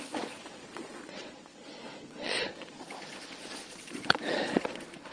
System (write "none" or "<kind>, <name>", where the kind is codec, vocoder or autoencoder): vocoder, Vocos